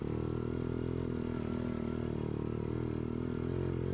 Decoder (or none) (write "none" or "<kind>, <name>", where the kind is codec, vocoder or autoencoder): none